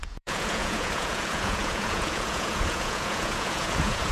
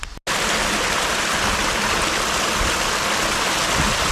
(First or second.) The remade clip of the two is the first